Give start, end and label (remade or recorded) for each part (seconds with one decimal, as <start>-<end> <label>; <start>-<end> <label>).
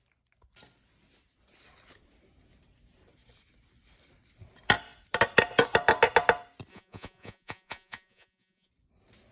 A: 0.0-6.7 recorded; 6.7-8.7 remade; 8.7-9.3 recorded